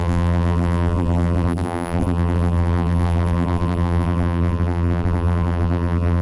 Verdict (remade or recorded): remade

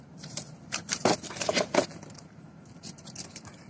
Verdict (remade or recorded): remade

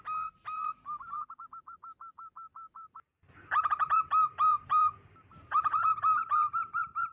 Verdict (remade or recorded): remade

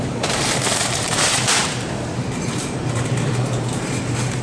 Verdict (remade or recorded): remade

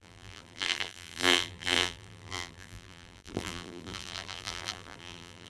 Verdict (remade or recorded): remade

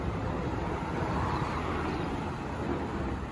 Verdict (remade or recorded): remade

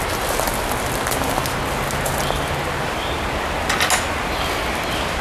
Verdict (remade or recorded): recorded